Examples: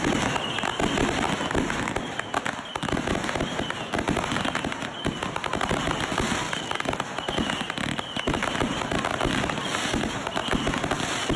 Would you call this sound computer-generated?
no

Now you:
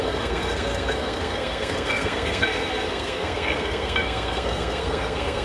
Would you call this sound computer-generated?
yes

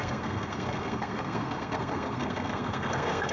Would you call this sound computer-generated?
yes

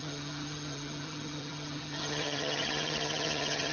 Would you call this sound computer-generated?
yes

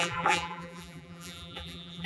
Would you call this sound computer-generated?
yes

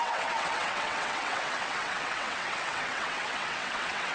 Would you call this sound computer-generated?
yes